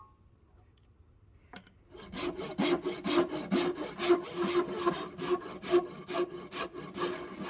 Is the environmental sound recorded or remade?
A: recorded